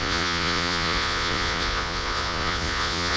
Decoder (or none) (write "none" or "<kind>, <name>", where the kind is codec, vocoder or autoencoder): vocoder, Vocos